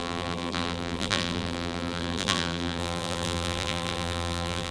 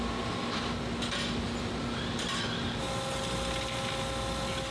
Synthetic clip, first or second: first